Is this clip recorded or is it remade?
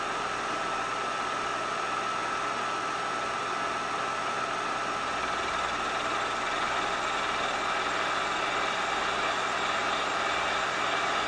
recorded